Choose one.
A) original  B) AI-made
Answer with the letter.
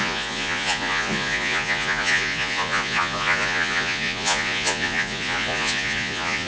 B